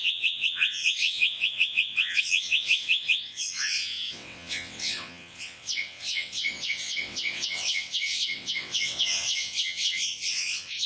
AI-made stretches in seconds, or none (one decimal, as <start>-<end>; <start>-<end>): 0.0-10.9